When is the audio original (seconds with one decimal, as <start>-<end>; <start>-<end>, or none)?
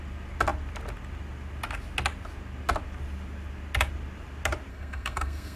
0.0-4.7